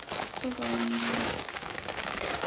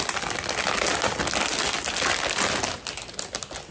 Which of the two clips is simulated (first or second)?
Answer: first